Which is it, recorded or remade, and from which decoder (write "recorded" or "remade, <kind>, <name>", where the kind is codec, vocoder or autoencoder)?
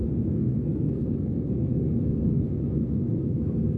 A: remade, codec, SNAC